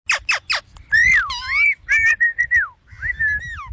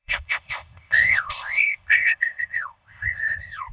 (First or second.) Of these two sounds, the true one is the first